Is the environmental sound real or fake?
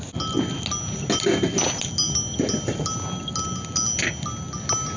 real